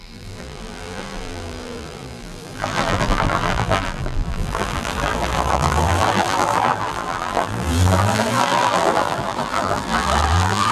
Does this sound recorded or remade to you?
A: remade